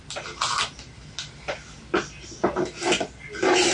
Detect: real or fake real